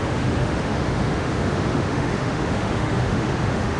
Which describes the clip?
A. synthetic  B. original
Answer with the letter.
A